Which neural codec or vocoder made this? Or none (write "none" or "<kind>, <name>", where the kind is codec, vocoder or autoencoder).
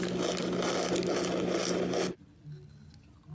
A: none